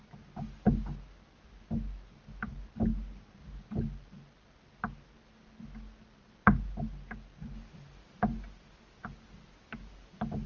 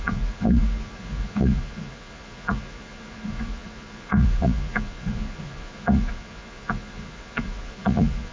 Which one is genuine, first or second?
first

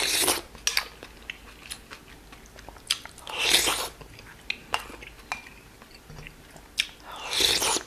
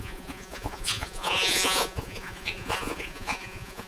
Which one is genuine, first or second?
first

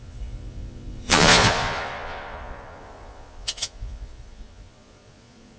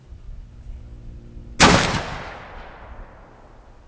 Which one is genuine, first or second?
second